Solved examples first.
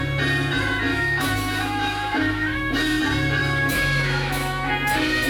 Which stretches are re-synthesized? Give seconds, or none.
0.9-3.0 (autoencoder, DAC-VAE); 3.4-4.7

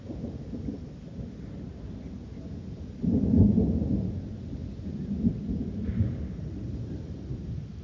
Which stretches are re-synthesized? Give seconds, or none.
none